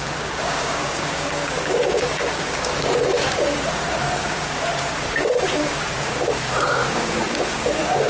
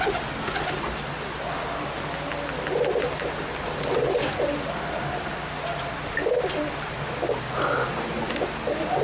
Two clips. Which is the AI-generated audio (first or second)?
first